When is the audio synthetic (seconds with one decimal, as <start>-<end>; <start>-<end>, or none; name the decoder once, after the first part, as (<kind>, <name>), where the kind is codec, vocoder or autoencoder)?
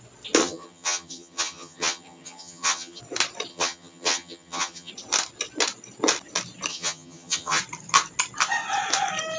0.4-3.0 (vocoder, HiFi-GAN); 3.5-4.9; 6.7-7.6